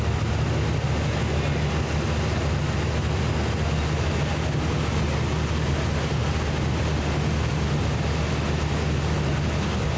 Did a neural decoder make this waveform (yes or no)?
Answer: no